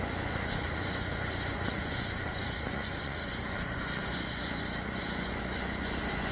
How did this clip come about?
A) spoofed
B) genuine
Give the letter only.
A